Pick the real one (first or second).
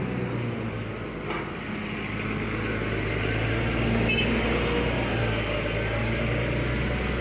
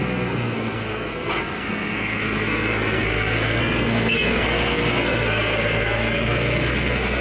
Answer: first